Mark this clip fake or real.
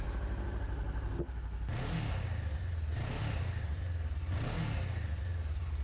real